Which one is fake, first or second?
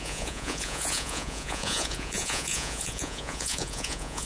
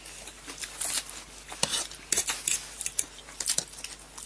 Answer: first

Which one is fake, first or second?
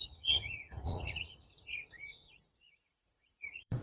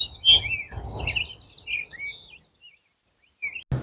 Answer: first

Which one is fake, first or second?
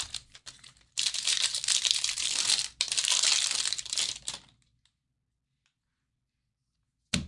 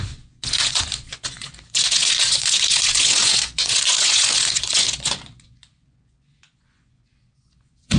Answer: second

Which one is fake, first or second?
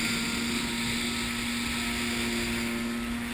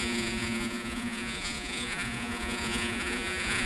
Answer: second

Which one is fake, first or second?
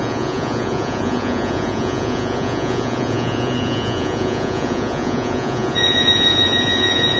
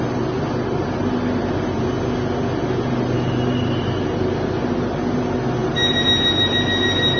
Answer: first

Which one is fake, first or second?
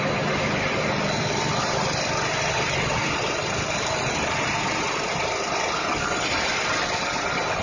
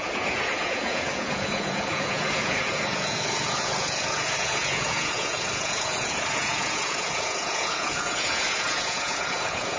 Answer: second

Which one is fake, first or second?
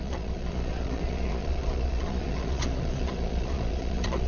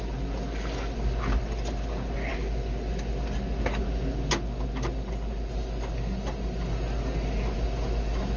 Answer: first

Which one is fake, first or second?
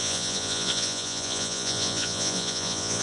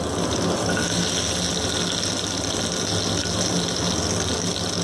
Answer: first